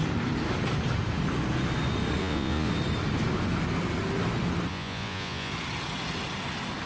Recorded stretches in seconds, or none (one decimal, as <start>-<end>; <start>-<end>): 0.0-2.2; 2.7-4.7; 5.5-6.9